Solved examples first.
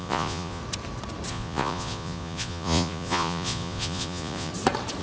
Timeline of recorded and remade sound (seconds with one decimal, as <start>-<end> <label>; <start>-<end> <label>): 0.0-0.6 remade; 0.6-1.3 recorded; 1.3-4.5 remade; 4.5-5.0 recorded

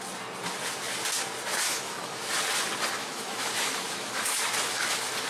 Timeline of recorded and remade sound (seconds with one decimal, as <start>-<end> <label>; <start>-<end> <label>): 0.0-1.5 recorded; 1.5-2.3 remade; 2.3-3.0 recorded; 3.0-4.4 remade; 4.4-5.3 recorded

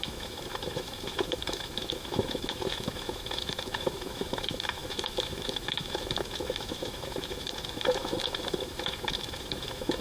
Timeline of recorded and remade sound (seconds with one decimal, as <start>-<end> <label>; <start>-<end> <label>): 0.0-10.0 remade

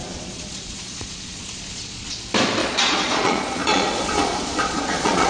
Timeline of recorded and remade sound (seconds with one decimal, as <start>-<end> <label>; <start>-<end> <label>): 0.0-2.2 remade; 2.2-2.6 recorded; 2.6-5.3 remade